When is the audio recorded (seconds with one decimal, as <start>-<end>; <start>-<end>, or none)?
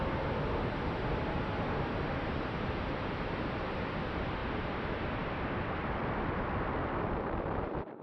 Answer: 0.0-2.0